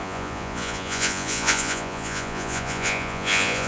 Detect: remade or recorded remade